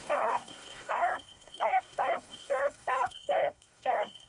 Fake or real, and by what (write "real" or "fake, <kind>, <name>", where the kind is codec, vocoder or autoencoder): fake, codec, SNAC